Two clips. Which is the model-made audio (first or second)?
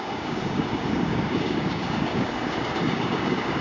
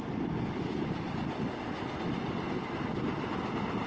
first